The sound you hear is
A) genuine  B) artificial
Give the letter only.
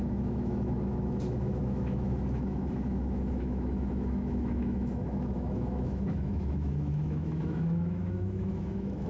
B